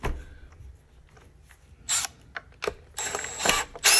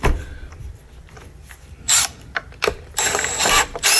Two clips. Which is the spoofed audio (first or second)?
second